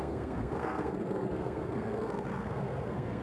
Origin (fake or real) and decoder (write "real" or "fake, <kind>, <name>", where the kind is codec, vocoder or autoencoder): fake, codec, SNAC